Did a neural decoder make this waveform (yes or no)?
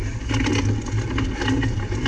no